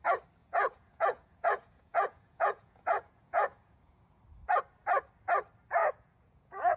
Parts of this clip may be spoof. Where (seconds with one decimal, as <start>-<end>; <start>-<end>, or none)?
0.4-4.2; 5.8-6.8